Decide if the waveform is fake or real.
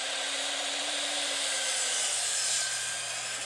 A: fake